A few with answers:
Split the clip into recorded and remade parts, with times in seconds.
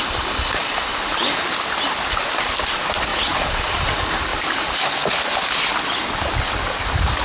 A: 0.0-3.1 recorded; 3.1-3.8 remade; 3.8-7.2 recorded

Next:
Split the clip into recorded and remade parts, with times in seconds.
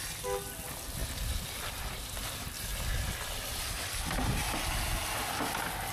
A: 0.0-5.9 recorded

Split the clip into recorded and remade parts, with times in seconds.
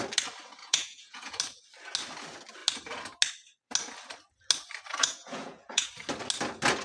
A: 0.0-0.6 recorded; 0.6-1.4 remade; 1.4-4.9 recorded; 4.9-5.9 remade; 5.9-6.8 recorded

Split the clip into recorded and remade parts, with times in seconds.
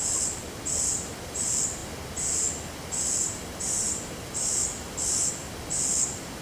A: 0.0-6.4 recorded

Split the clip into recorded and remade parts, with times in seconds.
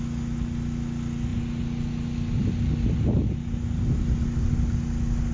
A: 0.0-5.3 recorded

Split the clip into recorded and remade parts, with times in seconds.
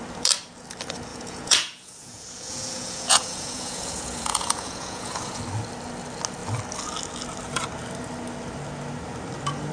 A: 0.0-1.1 recorded; 1.1-5.4 remade; 5.4-9.7 recorded